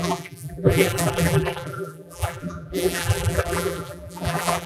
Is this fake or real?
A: fake